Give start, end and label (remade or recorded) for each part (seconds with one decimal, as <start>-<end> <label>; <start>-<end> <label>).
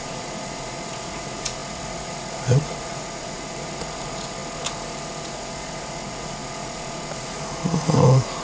0.0-4.4 remade; 4.4-5.2 recorded; 5.2-8.4 remade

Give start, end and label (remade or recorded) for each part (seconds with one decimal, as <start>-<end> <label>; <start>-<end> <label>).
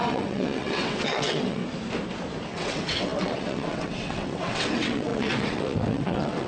0.0-1.6 remade; 1.6-2.5 recorded; 2.5-6.5 remade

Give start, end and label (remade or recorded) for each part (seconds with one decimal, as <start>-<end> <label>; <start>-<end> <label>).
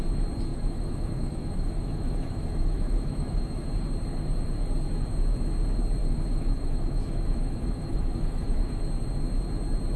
0.0-0.5 recorded; 0.5-3.7 remade; 3.7-6.0 recorded; 6.0-8.8 remade; 8.8-10.0 recorded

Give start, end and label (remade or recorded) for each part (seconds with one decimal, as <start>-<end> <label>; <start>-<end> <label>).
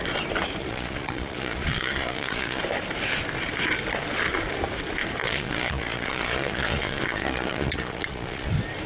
0.0-0.6 recorded; 0.6-2.6 remade; 2.6-5.2 recorded; 5.2-8.5 remade; 8.5-8.9 recorded